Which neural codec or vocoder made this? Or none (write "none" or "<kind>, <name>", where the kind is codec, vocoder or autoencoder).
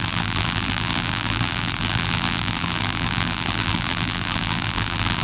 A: vocoder, BigVGAN v2